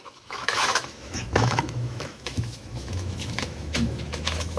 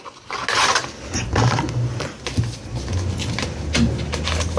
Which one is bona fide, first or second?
second